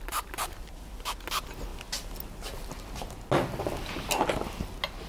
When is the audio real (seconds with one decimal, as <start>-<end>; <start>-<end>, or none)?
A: 0.0-5.1

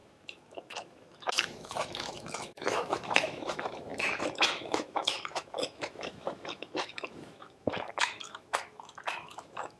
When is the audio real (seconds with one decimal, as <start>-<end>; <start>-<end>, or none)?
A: none